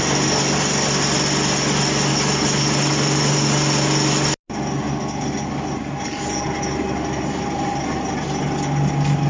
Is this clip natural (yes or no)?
yes